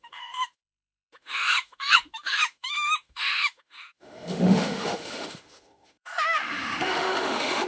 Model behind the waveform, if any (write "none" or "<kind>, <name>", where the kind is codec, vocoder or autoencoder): autoencoder, DAC-VAE